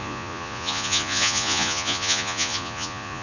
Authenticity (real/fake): fake